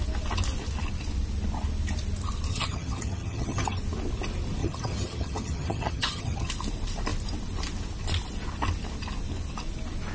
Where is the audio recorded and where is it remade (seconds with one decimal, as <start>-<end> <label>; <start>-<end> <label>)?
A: 0.0-2.5 recorded; 2.5-3.8 remade; 3.8-4.6 recorded; 4.6-6.5 remade; 6.5-10.1 recorded